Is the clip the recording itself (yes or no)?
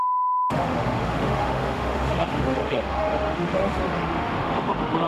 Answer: no